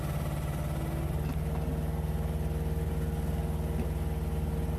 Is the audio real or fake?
real